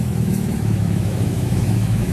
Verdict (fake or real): fake